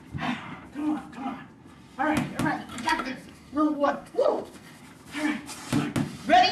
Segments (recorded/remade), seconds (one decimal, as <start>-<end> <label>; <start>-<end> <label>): 0.0-2.7 recorded; 2.7-4.8 remade; 4.8-6.5 recorded